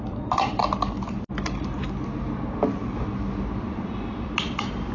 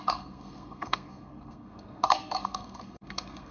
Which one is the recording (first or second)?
first